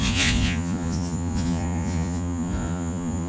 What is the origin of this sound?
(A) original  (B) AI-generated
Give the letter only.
B